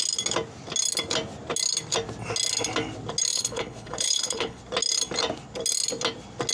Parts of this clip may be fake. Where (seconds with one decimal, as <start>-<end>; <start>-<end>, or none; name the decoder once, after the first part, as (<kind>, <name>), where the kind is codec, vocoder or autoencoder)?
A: 3.3-4.6 (codec, HILCodec)